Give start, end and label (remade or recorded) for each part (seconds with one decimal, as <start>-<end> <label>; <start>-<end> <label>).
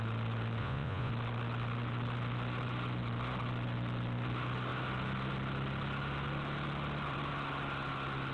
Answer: 0.0-0.6 recorded; 0.6-1.1 remade; 1.1-8.3 recorded